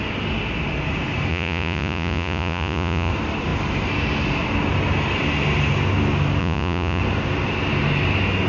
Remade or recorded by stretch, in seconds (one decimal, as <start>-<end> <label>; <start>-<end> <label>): 0.0-1.3 recorded; 1.3-3.1 remade; 3.1-6.4 recorded; 6.4-7.0 remade; 7.0-8.5 recorded